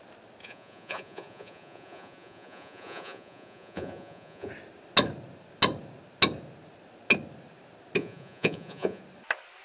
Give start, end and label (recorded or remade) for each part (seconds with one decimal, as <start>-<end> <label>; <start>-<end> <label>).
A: 0.0-0.4 recorded; 0.4-4.5 remade; 4.5-8.0 recorded; 8.0-9.0 remade; 9.0-9.6 recorded